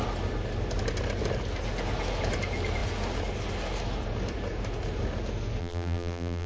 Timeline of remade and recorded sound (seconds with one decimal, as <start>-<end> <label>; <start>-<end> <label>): 0.0-5.6 recorded; 5.6-6.5 remade

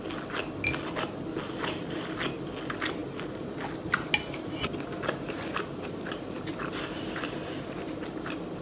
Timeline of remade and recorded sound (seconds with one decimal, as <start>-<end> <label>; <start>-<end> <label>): 0.0-8.6 recorded

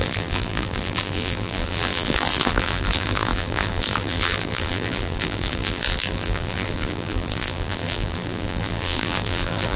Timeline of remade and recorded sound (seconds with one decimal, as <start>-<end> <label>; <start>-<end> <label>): 0.0-9.8 remade